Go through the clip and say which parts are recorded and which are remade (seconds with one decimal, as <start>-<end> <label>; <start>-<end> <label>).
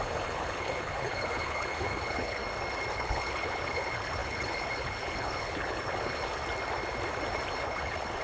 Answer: 0.0-2.4 remade; 2.4-2.9 recorded; 2.9-6.4 remade; 6.4-7.6 recorded; 7.6-8.2 remade